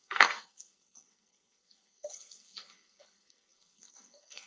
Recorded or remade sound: remade